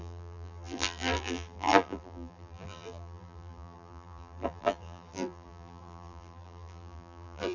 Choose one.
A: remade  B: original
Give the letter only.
A